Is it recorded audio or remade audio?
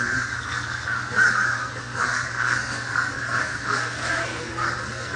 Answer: remade